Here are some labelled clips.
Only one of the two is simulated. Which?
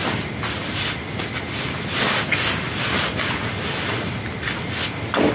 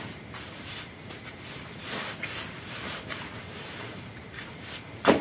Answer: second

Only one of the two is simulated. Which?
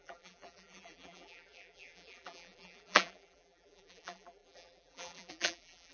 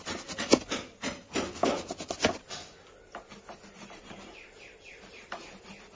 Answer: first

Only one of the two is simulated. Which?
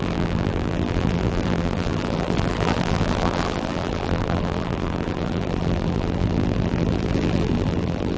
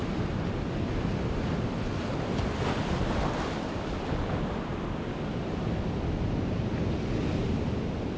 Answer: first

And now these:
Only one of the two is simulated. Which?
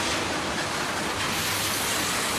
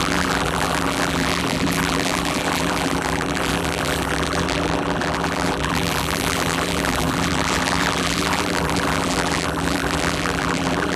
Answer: second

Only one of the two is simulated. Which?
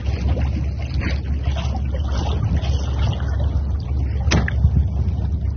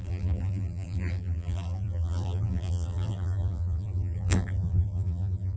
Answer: second